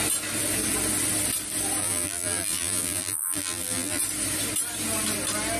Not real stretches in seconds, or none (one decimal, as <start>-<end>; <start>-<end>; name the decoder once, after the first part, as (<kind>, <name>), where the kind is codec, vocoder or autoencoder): 1.8-4.0 (vocoder, BigVGAN v2)